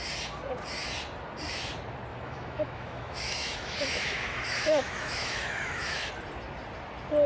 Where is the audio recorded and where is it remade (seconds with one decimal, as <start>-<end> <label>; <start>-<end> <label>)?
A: 0.0-2.1 recorded; 2.1-6.1 remade; 6.1-7.3 recorded